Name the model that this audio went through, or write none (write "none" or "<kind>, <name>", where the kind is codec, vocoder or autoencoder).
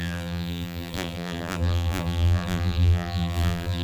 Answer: vocoder, BigVGAN v2